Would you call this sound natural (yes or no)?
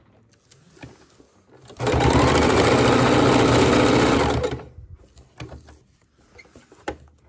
yes